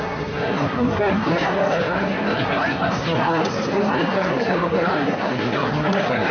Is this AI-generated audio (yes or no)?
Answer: yes